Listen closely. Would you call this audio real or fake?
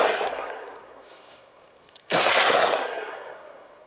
fake